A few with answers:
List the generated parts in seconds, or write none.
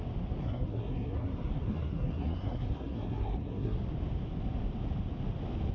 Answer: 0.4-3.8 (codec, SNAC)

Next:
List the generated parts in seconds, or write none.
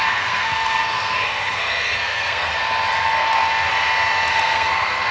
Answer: 0.0-2.5 (codec, SNAC); 3.0-3.7; 4.3-5.1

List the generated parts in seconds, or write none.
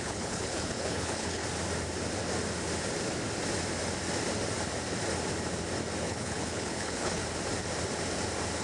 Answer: 0.0-1.4 (codec, HILCodec); 6.0-7.2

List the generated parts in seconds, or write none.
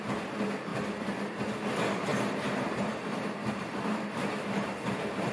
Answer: 0.7-1.4 (vocoder, BigVGAN v2); 2.1-5.3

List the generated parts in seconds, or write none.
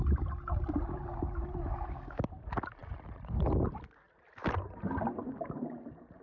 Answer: none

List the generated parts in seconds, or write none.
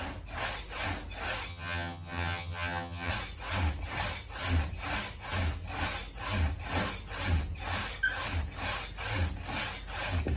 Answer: 1.5-3.1 (vocoder, HiFi-GAN)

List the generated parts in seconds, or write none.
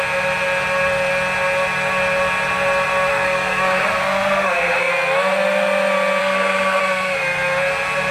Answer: 3.1-4.9 (codec, SNAC); 6.2-6.8